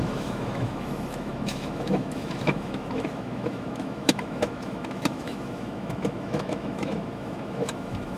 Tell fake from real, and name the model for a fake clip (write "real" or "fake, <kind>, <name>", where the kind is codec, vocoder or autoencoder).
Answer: fake, autoencoder, DAC-VAE